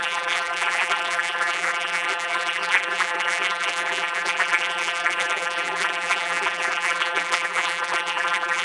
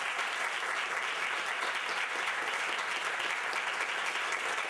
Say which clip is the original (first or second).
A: second